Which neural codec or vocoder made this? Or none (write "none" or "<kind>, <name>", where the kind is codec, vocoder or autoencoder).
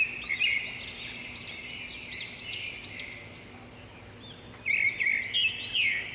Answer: none